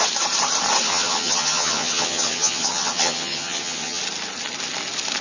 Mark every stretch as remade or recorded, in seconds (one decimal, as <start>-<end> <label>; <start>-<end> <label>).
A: 0.0-0.9 recorded; 0.9-4.0 remade; 4.0-5.2 recorded